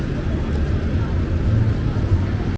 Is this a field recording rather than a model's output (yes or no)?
yes